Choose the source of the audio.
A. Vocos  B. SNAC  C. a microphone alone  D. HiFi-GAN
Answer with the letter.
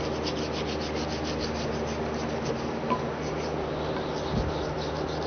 C